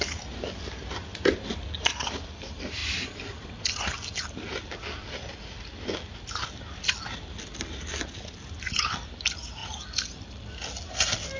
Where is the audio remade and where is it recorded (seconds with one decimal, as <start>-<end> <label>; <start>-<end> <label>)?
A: 0.0-11.4 recorded